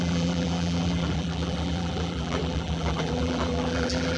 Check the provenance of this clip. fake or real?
fake